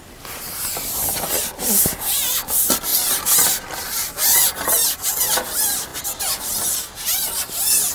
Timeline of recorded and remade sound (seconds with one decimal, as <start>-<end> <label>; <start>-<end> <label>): 0.0-7.9 recorded